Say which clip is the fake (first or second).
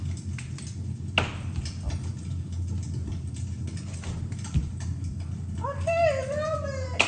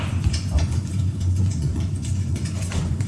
second